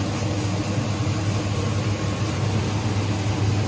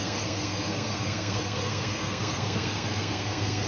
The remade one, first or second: second